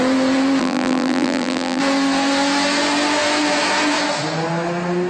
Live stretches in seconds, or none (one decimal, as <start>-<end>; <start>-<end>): 0.0-0.6; 1.8-5.1